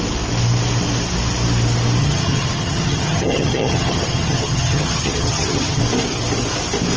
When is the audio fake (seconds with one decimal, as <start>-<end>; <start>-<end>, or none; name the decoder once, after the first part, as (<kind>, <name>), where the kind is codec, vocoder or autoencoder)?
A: 2.0-5.8 (vocoder, HiFi-GAN)